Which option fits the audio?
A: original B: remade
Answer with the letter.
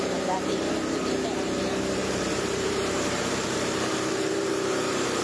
B